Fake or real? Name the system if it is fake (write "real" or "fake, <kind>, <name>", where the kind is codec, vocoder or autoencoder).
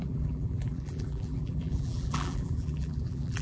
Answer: fake, vocoder, BigVGAN v2